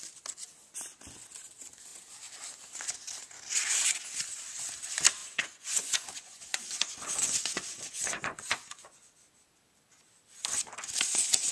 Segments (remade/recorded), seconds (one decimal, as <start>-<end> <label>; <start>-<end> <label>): 0.0-5.2 recorded; 5.2-9.1 remade; 9.1-11.5 recorded